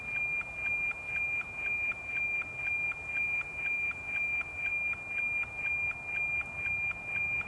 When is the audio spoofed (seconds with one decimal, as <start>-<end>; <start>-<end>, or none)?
none